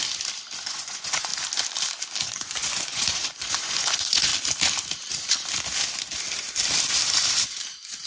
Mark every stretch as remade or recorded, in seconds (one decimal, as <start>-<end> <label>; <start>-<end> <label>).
0.0-0.6 recorded; 0.6-1.3 remade; 1.3-2.2 recorded; 2.2-4.3 remade; 4.3-8.1 recorded

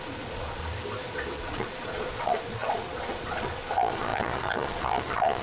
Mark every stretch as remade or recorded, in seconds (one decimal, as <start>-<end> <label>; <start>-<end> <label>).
0.0-0.6 remade; 0.6-1.4 recorded; 1.4-5.4 remade